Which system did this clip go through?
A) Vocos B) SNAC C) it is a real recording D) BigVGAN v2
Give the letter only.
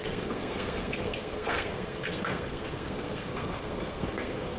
B